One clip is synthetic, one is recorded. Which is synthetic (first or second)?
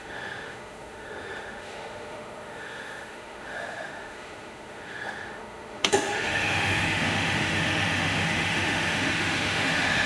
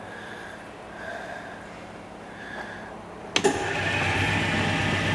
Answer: first